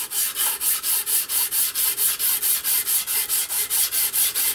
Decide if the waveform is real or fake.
real